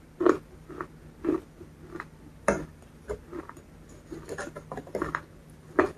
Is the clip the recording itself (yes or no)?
yes